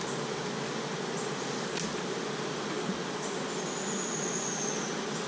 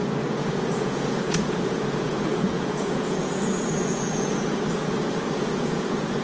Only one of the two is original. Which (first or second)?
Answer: first